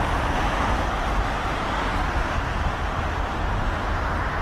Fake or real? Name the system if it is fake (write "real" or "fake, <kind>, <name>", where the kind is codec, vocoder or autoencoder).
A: real